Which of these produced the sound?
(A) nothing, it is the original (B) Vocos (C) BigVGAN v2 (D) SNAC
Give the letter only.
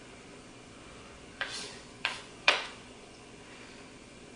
B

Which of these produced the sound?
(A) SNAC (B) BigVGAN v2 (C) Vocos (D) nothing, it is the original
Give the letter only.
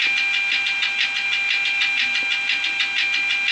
D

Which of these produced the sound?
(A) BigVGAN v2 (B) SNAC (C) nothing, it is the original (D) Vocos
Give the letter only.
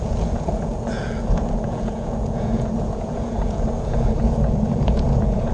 D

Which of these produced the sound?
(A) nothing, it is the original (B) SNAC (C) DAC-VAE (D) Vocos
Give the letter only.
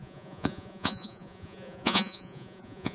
D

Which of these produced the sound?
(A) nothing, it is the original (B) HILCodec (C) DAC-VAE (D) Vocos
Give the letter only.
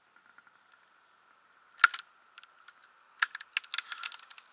A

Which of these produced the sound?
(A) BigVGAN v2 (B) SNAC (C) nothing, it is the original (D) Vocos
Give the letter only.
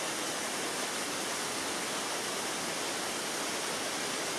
C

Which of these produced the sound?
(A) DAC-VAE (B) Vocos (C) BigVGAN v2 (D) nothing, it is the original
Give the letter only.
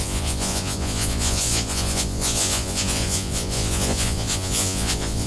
B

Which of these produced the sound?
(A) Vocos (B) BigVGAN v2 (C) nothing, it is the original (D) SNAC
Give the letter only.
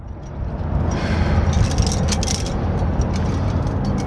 C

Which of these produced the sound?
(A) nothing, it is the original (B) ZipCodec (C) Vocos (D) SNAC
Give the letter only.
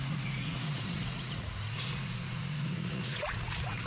C